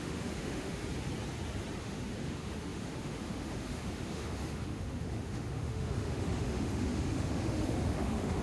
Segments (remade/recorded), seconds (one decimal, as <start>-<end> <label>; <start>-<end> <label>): 0.0-0.8 remade; 0.8-1.8 recorded; 1.8-8.4 remade